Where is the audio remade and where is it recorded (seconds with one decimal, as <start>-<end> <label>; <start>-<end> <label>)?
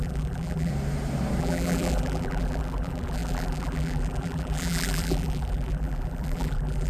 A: 0.0-0.7 remade; 0.7-1.4 recorded; 1.4-6.9 remade